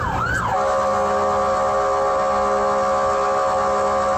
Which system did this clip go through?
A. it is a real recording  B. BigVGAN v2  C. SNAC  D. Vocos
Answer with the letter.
A